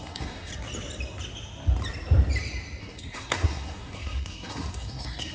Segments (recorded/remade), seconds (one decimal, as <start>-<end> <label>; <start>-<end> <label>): 0.0-0.5 remade; 0.5-2.8 recorded; 2.8-5.3 remade